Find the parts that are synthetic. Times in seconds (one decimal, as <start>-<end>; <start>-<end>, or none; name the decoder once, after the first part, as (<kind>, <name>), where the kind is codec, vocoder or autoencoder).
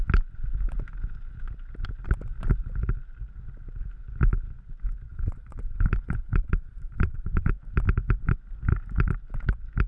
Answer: 5.1-7.5 (vocoder, Vocos)